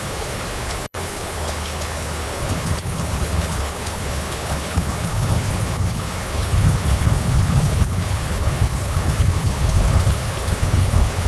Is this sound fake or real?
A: fake